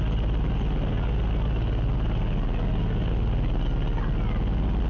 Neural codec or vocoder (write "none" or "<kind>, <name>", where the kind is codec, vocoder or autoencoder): none